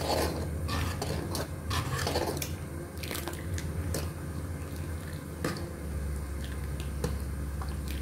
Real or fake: real